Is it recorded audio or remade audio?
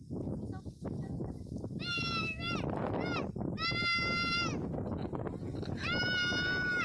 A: recorded